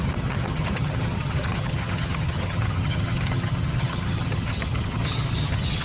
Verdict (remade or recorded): remade